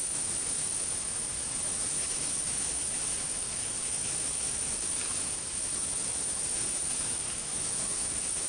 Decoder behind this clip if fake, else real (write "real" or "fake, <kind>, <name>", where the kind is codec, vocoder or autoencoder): fake, autoencoder, DAC-VAE